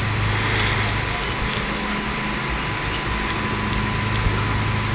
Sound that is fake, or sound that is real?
real